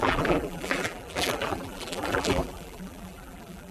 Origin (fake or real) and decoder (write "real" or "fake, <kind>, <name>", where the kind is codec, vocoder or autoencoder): fake, vocoder, BigVGAN v2